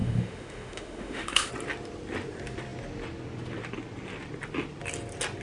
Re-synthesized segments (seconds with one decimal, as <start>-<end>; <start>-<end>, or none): 0.0-1.5